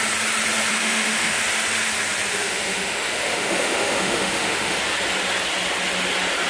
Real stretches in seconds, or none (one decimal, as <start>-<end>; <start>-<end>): 0.0-0.7; 1.4-2.3; 4.8-6.5